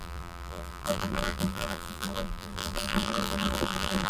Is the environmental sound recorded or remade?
remade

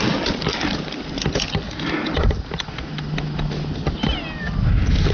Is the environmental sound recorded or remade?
recorded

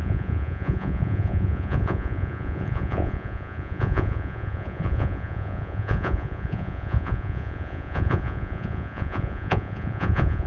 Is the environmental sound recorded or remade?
remade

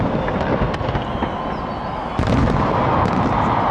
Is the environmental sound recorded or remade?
recorded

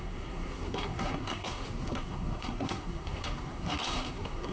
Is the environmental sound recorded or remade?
remade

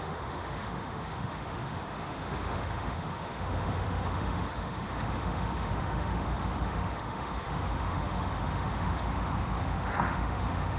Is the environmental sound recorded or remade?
remade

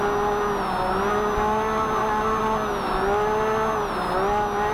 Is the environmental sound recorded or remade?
recorded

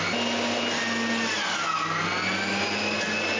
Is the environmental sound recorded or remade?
recorded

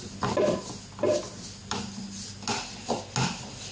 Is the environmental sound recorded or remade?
recorded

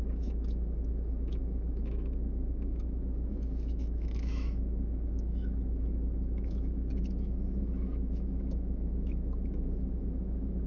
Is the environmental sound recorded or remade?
remade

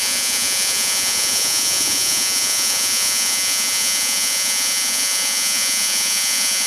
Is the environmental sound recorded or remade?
remade